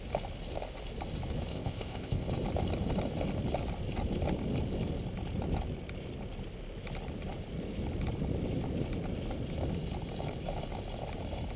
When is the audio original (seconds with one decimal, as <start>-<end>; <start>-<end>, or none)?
0.0-1.5; 2.3-11.6